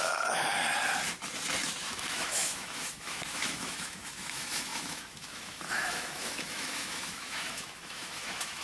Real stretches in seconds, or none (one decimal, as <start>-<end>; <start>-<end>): 0.5-1.8